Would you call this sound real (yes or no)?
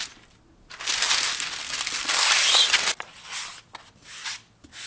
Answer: yes